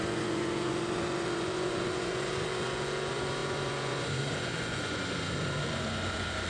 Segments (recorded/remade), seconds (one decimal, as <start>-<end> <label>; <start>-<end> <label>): 0.0-6.5 remade

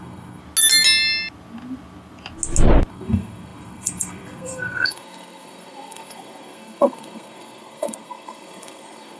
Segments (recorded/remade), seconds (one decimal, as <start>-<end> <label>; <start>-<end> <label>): 0.0-0.4 remade; 0.4-2.9 recorded; 2.9-9.2 remade

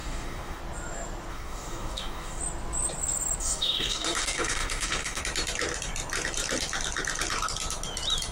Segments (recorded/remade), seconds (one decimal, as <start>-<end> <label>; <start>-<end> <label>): 0.0-0.6 remade; 0.6-1.3 recorded; 1.3-2.4 remade; 2.4-3.4 recorded; 3.4-5.2 remade; 5.2-8.3 recorded

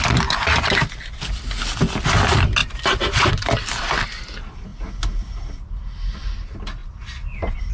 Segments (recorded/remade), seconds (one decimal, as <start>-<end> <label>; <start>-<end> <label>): 0.0-7.7 recorded

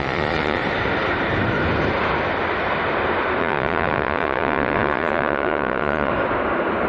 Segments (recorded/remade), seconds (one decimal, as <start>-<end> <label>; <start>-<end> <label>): 0.0-0.6 remade; 0.6-3.4 recorded; 3.4-6.1 remade; 6.1-6.9 recorded